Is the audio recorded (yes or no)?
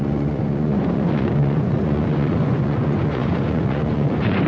no